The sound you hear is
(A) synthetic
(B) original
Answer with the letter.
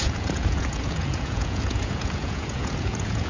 A